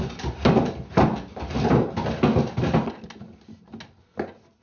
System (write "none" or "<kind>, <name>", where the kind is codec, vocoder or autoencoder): none